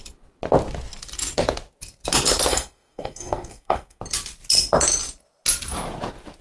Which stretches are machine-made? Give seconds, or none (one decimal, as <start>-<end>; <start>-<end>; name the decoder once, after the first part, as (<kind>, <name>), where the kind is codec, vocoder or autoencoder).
2.5-4.0 (codec, SNAC)